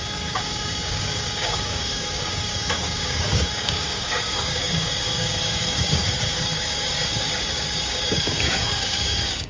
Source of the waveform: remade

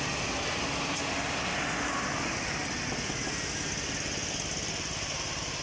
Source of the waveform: recorded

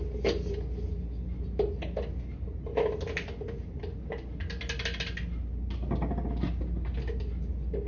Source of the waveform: recorded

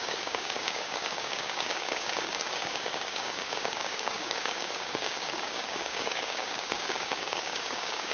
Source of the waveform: remade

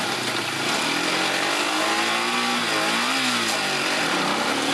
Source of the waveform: recorded